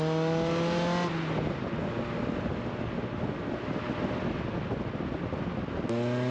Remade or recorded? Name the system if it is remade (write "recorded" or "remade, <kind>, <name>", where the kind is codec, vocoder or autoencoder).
recorded